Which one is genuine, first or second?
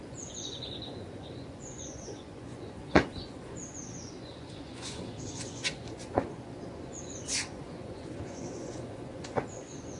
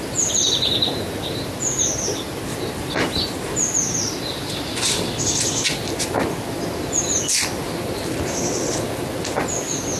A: second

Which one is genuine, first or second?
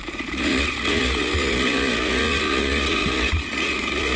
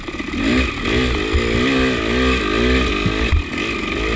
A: second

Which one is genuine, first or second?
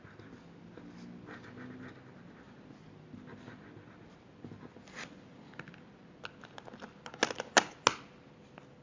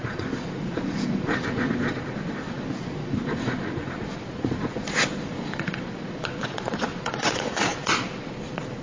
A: first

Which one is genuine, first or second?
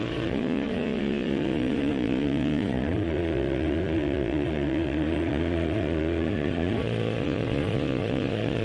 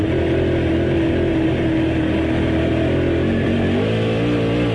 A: second